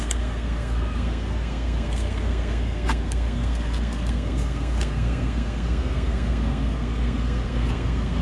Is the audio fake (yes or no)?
yes